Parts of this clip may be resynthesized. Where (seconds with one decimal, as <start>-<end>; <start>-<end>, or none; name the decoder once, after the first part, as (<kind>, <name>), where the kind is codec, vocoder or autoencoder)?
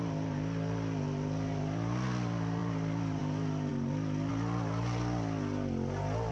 2.6-3.2 (vocoder, BigVGAN v2); 3.7-4.3